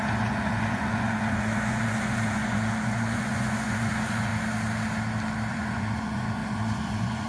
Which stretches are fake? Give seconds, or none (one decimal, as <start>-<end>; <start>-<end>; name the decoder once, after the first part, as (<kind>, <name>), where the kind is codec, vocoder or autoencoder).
0.0-4.3 (vocoder, Vocos); 5.5-7.3